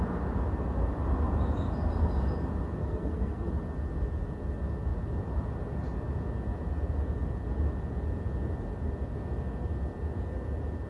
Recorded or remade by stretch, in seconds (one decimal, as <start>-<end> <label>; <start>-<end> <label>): 0.0-2.8 recorded; 2.8-3.5 remade; 3.5-10.9 recorded